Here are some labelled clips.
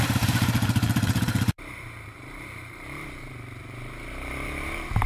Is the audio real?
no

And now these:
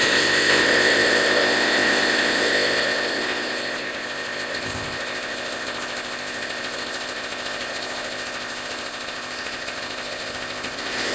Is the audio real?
no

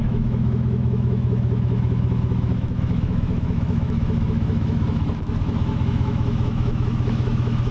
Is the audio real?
no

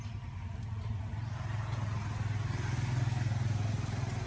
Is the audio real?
yes